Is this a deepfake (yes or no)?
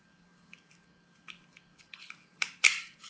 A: yes